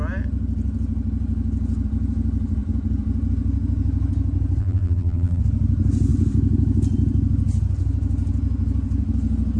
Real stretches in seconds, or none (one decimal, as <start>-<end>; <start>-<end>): 0.0-4.6; 5.4-9.6